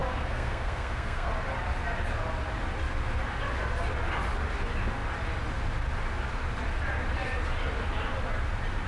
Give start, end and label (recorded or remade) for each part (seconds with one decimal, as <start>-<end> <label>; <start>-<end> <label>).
0.0-1.3 remade; 1.3-8.9 recorded